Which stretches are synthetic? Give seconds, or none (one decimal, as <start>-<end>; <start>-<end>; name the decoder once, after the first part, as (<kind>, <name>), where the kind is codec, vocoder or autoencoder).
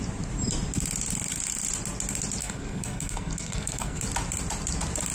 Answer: 2.4-4.0 (codec, SNAC)